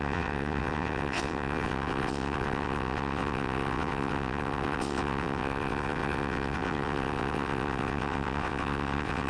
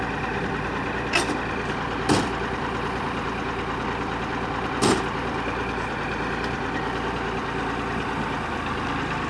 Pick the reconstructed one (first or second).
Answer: first